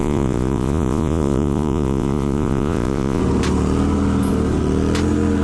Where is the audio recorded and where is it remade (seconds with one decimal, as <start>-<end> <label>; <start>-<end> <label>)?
0.0-3.2 remade; 3.2-5.4 recorded